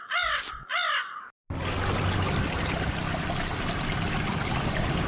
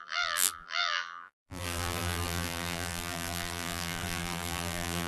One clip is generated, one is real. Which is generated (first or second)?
second